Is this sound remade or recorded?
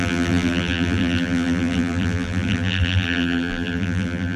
remade